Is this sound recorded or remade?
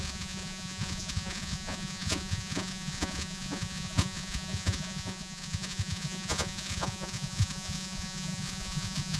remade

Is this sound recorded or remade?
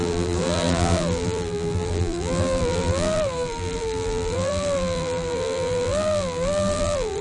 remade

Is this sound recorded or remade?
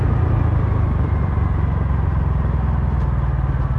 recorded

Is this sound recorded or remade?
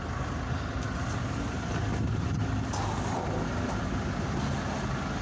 recorded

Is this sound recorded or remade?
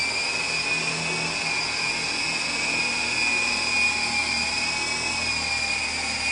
recorded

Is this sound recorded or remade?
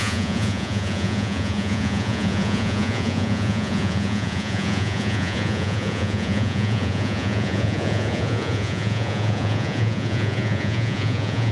remade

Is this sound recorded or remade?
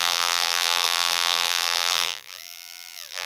remade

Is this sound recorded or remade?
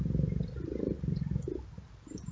recorded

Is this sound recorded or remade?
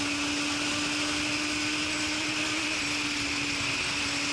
recorded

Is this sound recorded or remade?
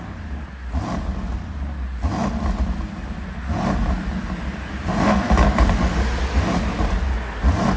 recorded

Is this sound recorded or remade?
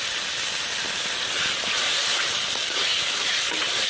recorded